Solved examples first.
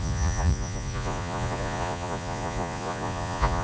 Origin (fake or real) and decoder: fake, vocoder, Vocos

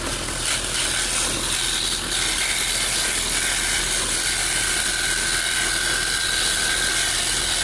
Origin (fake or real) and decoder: real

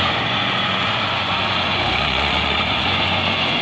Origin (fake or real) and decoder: fake, vocoder, Vocos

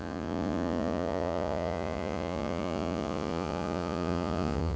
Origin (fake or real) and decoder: fake, vocoder, Vocos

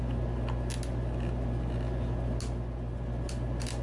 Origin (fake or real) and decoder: real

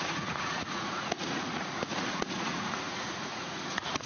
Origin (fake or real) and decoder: fake, vocoder, Vocos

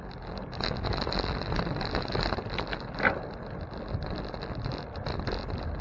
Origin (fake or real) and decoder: real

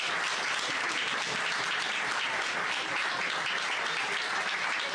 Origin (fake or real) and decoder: real